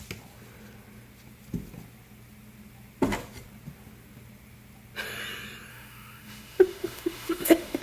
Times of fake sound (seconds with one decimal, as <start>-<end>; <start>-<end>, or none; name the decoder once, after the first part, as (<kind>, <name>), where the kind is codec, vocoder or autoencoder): 5.7-7.8 (autoencoder, DAC-VAE)